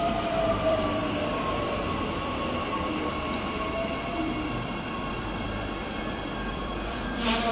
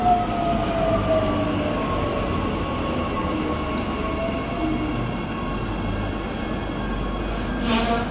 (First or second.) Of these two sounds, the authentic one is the second